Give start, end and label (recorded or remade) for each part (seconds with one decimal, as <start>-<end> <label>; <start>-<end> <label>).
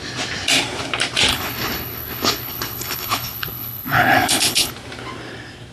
0.0-1.3 recorded; 1.3-4.7 remade; 4.7-5.7 recorded